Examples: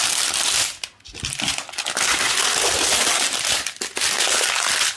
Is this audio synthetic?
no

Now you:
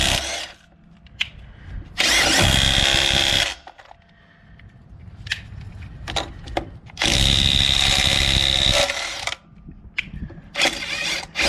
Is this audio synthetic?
no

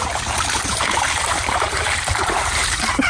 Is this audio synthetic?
yes